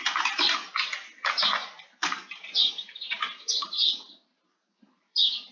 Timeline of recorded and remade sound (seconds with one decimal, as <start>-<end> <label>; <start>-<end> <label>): 0.0-0.9 remade; 0.9-1.9 recorded; 1.9-5.5 remade